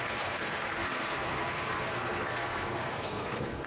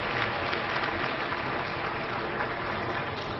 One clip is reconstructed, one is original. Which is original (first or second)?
second